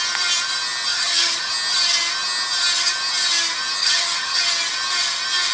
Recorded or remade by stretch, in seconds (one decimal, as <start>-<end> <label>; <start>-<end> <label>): 0.0-0.9 recorded; 0.9-1.5 remade; 1.5-3.8 recorded; 3.8-4.4 remade; 4.4-5.5 recorded